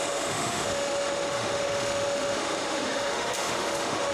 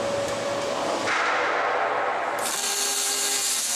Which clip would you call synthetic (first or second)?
first